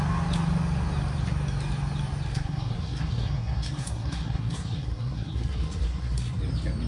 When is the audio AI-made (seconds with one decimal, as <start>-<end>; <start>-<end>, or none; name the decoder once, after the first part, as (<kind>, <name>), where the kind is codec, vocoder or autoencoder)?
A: 2.3-6.4 (codec, SNAC)